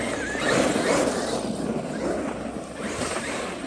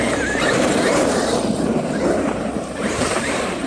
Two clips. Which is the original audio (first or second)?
first